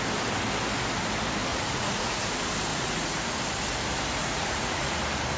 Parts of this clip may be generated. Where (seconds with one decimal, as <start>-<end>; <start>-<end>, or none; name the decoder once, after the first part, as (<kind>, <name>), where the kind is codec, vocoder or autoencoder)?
1.5-2.2 (vocoder, Vocos); 2.7-3.4; 4.2-5.0